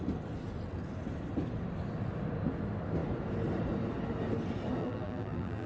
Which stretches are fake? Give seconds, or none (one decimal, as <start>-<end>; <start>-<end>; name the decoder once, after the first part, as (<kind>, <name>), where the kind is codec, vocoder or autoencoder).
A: 4.8-5.7 (vocoder, BigVGAN v2)